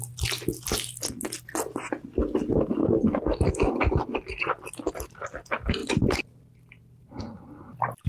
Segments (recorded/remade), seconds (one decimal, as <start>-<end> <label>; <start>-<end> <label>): 0.0-2.8 recorded; 2.8-3.4 remade; 3.4-8.1 recorded